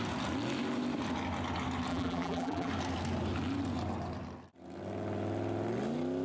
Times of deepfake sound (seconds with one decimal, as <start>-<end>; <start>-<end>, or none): 1.9-2.7